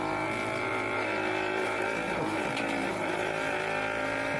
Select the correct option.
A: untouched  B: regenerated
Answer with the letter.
B